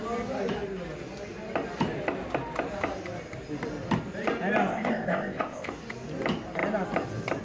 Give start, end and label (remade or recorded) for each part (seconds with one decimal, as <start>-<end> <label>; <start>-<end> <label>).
0.0-4.7 recorded; 4.7-5.7 remade; 5.7-7.4 recorded